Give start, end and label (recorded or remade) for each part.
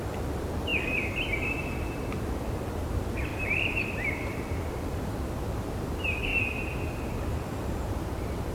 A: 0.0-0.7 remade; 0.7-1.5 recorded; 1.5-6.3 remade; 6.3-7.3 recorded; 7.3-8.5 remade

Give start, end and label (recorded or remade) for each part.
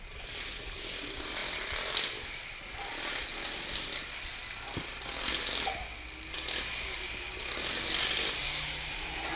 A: 0.0-4.4 remade; 4.4-7.7 recorded; 7.7-9.4 remade